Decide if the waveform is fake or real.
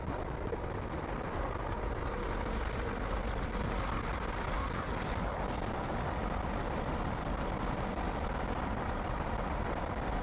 real